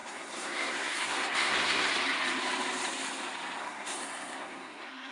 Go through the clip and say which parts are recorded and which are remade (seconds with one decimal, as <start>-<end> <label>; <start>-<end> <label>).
0.0-1.9 remade; 1.9-3.6 recorded; 3.6-5.1 remade